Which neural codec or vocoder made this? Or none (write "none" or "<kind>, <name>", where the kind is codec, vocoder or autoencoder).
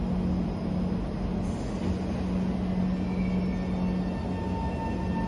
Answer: none